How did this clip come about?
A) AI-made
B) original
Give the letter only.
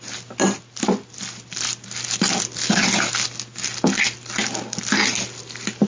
B